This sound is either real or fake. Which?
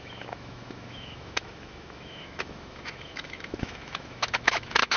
fake